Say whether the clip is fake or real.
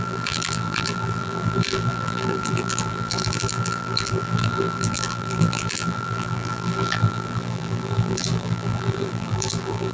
fake